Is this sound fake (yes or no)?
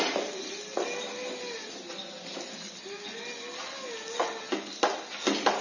no